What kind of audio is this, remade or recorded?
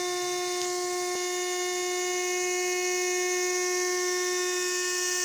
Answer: recorded